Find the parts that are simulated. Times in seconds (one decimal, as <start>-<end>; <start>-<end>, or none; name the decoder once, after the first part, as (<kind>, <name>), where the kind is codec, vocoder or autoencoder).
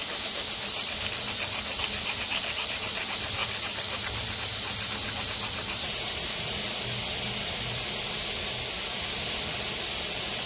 none